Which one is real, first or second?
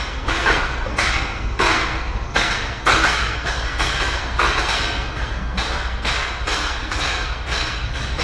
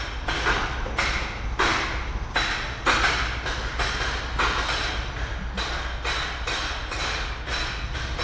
second